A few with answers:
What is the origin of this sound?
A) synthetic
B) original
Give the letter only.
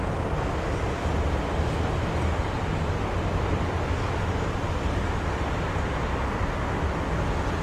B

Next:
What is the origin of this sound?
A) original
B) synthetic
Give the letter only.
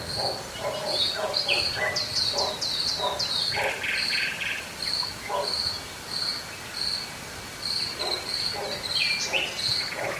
A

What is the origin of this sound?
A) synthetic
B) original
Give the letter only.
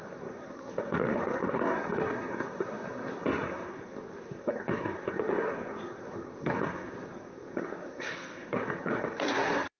A